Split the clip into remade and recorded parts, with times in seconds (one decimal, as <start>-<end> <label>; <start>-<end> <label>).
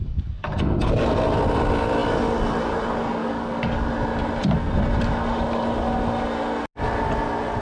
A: 0.0-0.6 remade; 0.6-3.2 recorded; 3.2-3.9 remade; 3.9-7.6 recorded